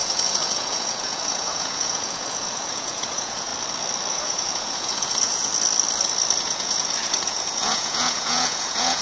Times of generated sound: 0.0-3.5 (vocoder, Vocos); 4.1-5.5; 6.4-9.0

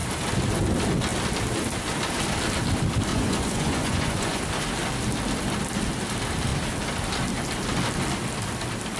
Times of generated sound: 3.1-4.4 (vocoder, Vocos)

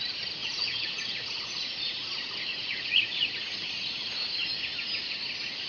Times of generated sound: 0.4-3.7 (vocoder, Vocos)

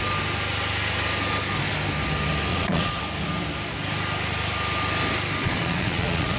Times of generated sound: 2.5-3.0 (vocoder, Vocos); 5.4-6.4